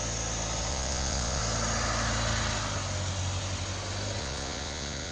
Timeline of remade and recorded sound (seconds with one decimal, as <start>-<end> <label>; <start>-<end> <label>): 0.0-0.7 recorded; 0.7-1.4 remade; 1.4-4.2 recorded; 4.2-5.1 remade